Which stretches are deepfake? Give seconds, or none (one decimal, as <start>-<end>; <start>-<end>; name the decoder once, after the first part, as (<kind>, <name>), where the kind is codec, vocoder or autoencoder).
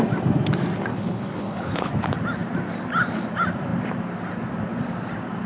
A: 0.9-1.9 (codec, HILCodec)